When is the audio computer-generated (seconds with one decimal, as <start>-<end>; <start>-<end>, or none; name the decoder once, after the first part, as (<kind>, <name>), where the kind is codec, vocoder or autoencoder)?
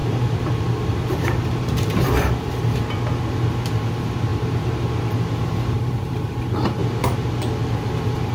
0.0-2.8 (vocoder, BigVGAN v2); 4.3-6.3